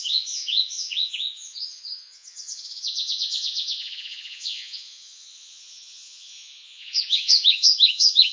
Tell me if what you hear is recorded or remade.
remade